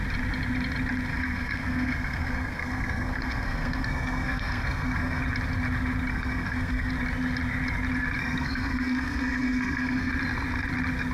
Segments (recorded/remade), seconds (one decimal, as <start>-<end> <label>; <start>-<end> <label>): 0.0-1.1 recorded; 1.1-5.2 remade; 5.2-6.1 recorded; 6.1-6.9 remade; 6.9-8.2 recorded; 8.2-10.1 remade; 10.1-11.1 recorded